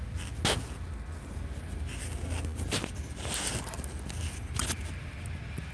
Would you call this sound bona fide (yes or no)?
yes